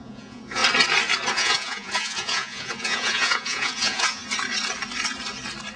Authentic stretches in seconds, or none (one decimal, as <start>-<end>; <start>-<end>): 0.6-1.3; 4.2-5.8